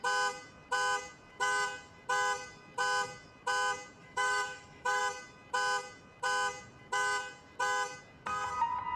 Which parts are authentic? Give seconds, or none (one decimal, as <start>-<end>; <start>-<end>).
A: 0.0-4.0; 5.0-9.0